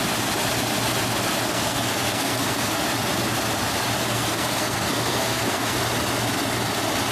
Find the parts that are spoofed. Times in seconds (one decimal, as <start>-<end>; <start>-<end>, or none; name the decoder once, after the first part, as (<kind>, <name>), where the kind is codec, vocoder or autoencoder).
1.5-2.8 (codec, SNAC); 4.1-5.8